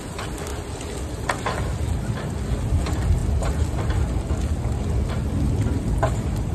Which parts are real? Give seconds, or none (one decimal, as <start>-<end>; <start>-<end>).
0.0-6.5